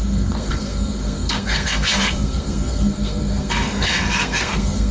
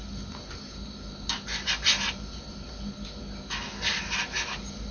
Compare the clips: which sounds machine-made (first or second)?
first